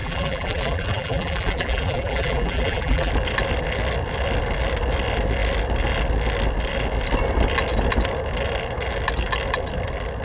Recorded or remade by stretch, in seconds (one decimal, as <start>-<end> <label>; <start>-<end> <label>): 0.0-3.1 remade; 3.1-10.2 recorded